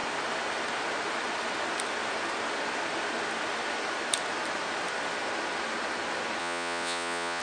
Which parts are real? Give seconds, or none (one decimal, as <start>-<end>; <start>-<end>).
0.0-6.4